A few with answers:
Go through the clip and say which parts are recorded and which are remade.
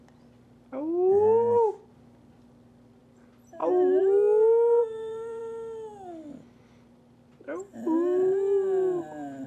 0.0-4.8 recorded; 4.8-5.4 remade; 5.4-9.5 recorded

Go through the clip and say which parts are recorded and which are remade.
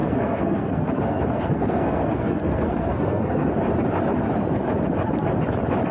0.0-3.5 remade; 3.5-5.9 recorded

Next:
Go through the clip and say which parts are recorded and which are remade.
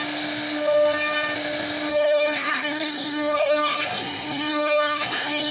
0.0-1.9 recorded; 1.9-5.5 remade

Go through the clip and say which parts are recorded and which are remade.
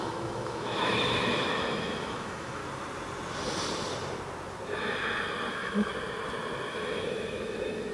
0.0-2.6 remade; 2.6-5.5 recorded; 5.5-5.9 remade; 5.9-6.7 recorded; 6.7-7.9 remade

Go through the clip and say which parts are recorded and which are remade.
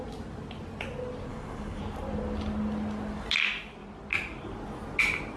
0.0-1.3 recorded; 1.3-1.8 remade; 1.8-5.4 recorded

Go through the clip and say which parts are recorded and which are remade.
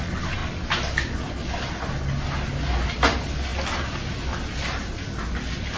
0.0-5.8 recorded